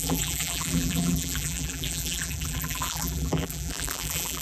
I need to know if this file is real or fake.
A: fake